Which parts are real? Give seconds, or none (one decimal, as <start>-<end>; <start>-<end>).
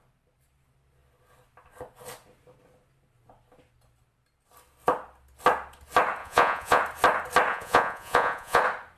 0.0-6.2; 6.8-7.5; 8.6-9.0